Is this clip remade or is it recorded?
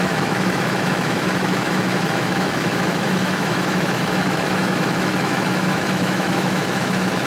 remade